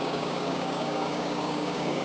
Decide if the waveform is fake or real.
fake